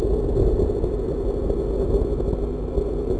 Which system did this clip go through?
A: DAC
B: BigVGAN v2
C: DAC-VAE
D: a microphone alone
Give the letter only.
D